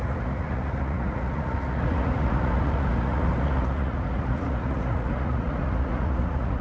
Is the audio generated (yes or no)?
yes